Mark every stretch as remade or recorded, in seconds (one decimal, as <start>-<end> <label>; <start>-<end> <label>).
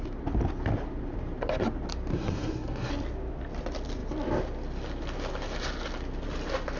0.0-2.1 recorded; 2.1-2.9 remade; 2.9-6.8 recorded